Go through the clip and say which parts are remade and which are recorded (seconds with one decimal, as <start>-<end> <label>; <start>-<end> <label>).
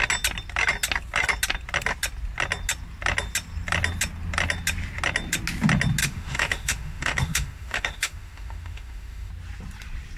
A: 0.0-6.0 recorded; 6.0-9.3 remade; 9.3-10.2 recorded